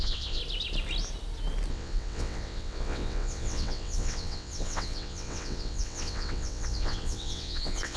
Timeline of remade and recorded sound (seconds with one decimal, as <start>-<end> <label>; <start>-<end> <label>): 0.0-0.4 remade; 0.4-1.7 recorded; 1.7-8.0 remade